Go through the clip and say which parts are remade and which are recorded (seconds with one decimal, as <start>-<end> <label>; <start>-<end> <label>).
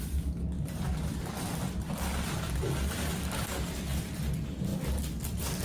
0.0-4.7 recorded; 4.7-5.6 remade